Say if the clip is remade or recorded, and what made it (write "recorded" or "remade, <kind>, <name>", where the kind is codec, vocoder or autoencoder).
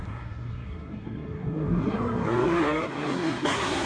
remade, codec, SNAC